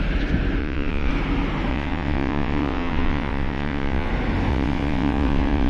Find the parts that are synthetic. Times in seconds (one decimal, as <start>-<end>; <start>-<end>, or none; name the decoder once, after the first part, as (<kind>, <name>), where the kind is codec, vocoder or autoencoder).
0.6-1.1 (vocoder, WaveNeXt); 1.7-4.1; 4.5-5.7